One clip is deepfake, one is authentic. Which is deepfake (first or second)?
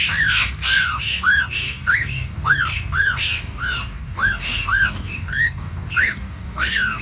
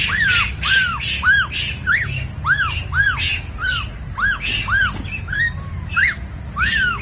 first